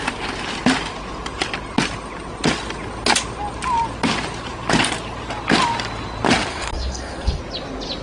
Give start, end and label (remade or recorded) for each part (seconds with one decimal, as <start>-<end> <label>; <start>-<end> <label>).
0.0-6.5 recorded; 6.5-7.4 remade; 7.4-8.0 recorded